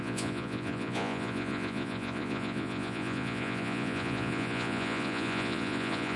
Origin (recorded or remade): remade